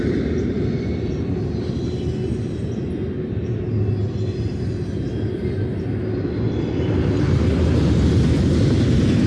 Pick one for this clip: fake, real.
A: real